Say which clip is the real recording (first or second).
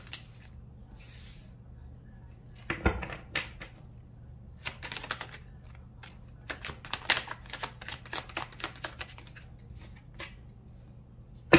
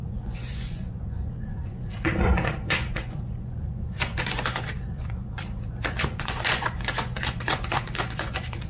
first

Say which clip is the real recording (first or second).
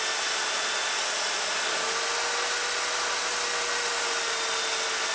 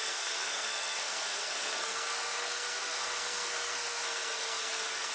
first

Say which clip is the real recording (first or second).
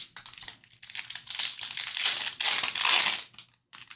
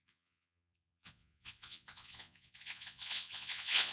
first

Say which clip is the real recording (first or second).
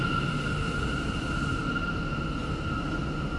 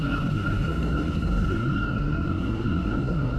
first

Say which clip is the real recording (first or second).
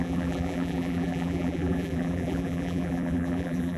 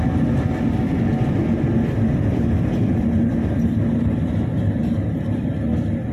second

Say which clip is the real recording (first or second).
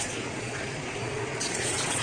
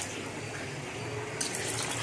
second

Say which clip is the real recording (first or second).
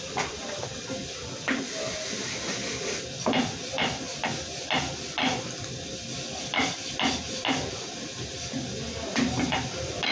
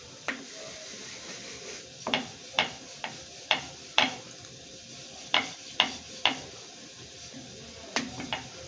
first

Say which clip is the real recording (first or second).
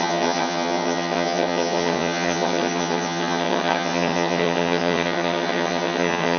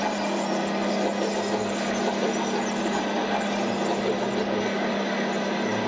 second